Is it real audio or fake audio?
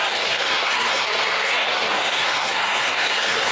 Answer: fake